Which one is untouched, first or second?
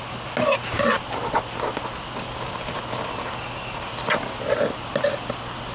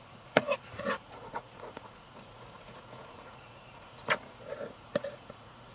first